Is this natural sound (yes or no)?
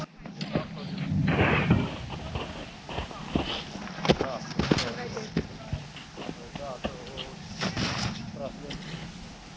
yes